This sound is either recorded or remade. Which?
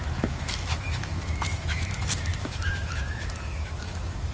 remade